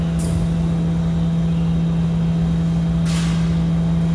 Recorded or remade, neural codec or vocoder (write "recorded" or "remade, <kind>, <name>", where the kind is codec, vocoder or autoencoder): recorded